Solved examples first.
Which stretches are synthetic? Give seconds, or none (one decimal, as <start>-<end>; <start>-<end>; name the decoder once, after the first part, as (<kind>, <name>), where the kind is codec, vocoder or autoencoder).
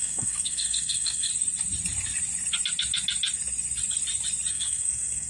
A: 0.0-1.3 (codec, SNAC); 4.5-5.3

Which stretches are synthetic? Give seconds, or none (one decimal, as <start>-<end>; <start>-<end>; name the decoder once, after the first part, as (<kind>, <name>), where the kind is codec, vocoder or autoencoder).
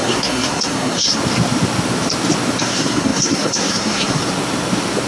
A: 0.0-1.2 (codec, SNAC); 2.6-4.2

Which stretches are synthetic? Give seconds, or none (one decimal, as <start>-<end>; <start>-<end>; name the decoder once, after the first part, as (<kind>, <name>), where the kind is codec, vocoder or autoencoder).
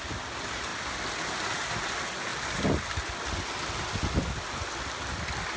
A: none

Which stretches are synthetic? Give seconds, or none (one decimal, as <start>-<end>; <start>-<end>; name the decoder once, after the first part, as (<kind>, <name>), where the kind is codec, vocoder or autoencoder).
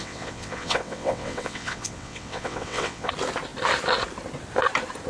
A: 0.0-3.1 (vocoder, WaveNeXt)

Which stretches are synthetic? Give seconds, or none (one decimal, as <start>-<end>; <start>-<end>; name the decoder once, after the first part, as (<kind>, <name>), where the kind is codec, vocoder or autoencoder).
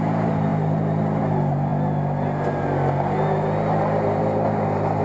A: none